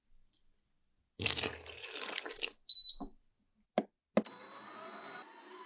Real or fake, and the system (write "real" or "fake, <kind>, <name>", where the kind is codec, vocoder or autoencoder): real